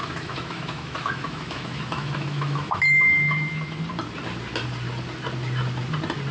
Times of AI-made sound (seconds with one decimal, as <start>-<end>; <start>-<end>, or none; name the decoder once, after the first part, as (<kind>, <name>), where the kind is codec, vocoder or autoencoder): 0.0-3.8 (autoencoder, DAC-VAE)